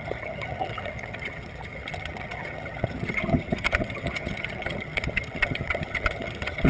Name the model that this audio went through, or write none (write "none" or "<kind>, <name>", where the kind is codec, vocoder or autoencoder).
vocoder, HiFi-GAN